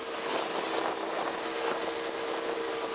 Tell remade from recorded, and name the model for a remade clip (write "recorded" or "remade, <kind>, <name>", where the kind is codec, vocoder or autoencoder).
recorded